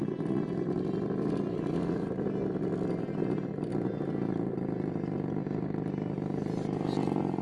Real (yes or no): yes